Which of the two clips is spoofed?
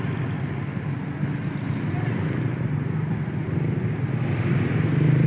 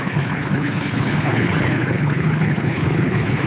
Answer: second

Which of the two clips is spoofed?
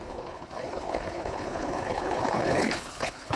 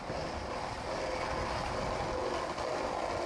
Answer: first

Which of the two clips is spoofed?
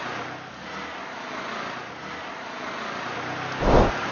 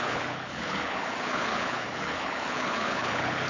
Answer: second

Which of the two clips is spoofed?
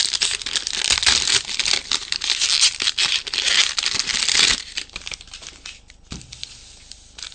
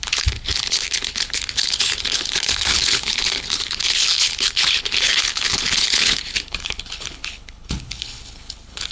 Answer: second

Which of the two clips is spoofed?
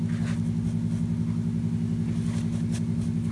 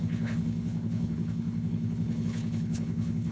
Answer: second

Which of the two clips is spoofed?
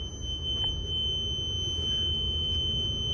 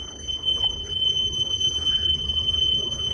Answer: second